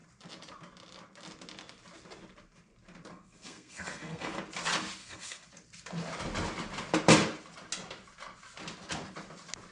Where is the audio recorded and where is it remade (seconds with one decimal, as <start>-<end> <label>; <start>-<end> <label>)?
0.0-3.1 recorded; 3.1-4.4 remade; 4.4-5.0 recorded; 5.0-5.5 remade; 5.5-9.7 recorded